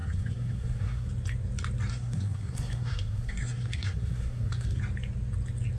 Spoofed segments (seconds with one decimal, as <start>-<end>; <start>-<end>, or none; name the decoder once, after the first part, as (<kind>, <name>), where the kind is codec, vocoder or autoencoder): 0.0-1.1 (codec, SNAC); 1.9-4.8